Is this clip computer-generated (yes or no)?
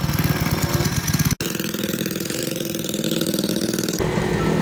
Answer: no